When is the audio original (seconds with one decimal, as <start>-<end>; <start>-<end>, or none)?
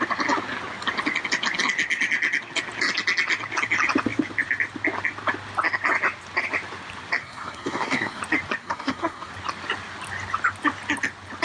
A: 0.0-7.2; 8.2-8.6; 9.3-11.4